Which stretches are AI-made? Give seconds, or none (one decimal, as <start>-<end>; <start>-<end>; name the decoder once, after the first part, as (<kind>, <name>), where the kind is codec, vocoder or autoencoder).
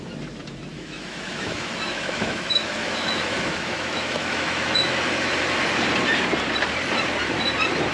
0.7-5.3 (autoencoder, DAC-VAE)